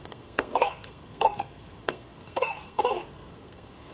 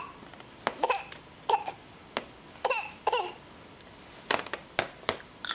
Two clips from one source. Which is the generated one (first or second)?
first